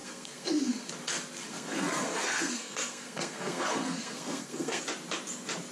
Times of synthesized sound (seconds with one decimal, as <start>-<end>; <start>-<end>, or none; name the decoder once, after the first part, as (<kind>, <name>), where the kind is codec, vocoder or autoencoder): 0.0-0.9 (codec, SNAC); 1.4-4.8